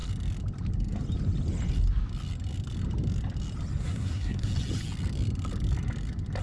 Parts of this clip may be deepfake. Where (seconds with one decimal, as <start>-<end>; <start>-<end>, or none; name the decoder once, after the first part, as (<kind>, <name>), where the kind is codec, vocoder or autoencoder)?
3.8-4.5 (codec, SNAC)